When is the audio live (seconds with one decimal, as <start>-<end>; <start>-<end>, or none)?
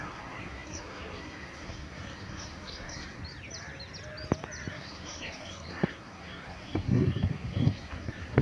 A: 3.2-4.7